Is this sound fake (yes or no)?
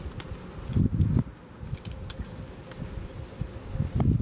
no